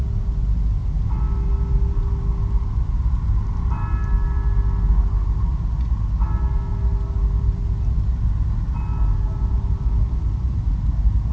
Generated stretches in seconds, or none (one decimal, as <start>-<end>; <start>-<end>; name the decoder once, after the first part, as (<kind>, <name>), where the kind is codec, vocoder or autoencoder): none